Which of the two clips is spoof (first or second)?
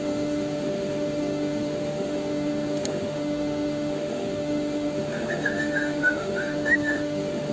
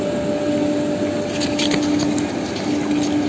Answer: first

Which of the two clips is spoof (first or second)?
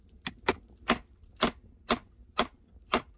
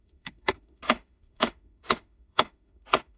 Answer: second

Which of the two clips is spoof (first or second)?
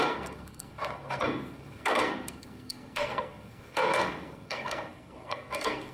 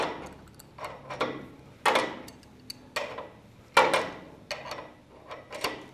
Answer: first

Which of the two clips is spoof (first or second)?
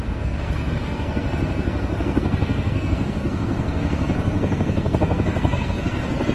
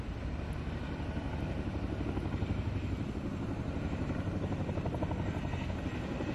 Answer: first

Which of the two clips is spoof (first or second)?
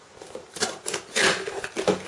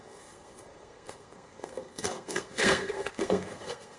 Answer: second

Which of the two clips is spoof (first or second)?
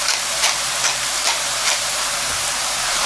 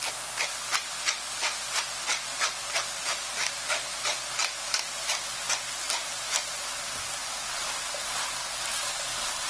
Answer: first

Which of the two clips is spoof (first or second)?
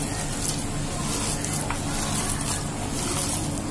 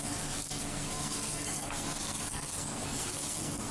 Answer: second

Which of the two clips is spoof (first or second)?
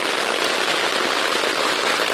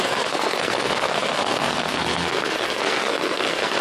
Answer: second